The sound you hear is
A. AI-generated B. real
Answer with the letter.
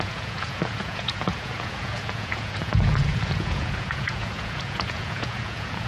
A